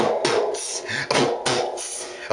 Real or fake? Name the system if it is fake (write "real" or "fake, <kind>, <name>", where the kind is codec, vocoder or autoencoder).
real